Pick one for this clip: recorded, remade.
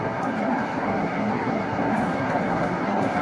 remade